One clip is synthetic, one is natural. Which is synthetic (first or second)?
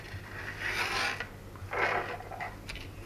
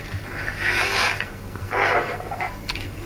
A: second